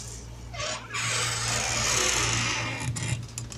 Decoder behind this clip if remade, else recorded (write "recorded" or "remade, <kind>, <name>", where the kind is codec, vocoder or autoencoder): recorded